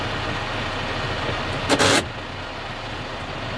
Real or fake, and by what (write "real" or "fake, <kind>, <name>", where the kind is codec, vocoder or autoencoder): real